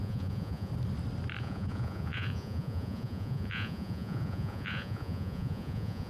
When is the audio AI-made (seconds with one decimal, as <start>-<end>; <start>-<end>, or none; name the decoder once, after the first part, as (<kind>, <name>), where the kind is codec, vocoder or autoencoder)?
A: 0.0-0.7 (vocoder, Vocos); 1.4-6.1